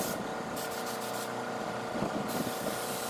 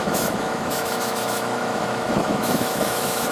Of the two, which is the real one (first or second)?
first